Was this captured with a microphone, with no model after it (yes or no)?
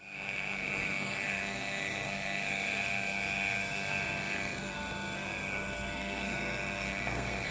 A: no